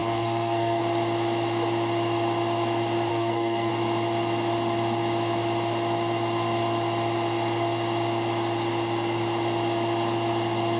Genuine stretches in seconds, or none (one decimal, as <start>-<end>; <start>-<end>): 0.8-3.1; 3.7-10.8